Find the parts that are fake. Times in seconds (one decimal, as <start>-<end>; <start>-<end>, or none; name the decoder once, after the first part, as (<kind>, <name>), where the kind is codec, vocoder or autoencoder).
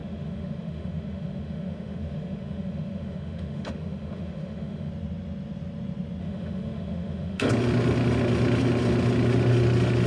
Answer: 0.0-4.9 (autoencoder, DAC-VAE); 6.2-7.5